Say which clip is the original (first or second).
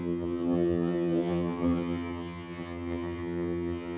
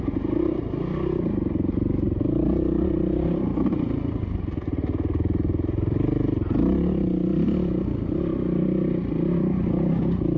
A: second